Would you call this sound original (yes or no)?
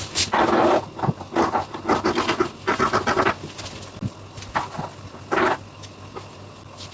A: yes